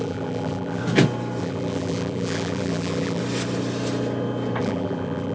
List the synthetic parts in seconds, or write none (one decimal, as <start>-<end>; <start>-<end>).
0.0-0.8; 1.4-3.2; 4.6-5.3